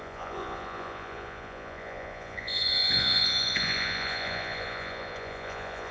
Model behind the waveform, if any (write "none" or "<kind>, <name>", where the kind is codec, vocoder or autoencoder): vocoder, Vocos